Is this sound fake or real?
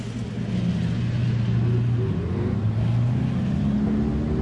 real